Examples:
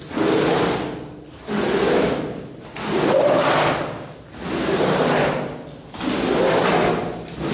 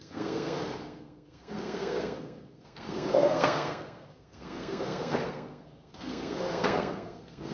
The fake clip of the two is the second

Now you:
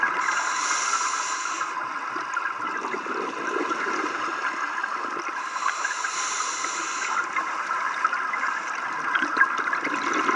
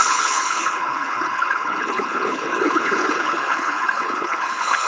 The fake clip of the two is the second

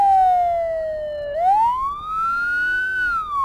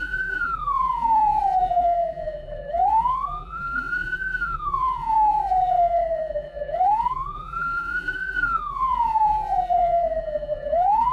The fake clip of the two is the second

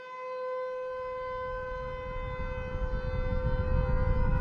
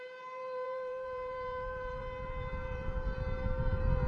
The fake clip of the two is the second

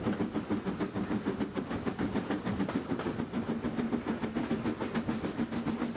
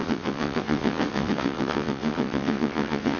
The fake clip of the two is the second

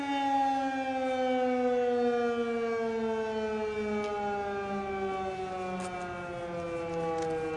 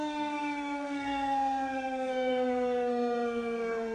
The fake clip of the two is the second